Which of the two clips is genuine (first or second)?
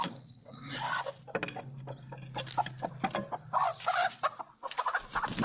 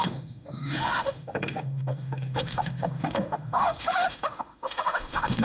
first